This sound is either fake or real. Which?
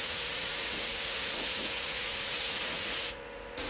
fake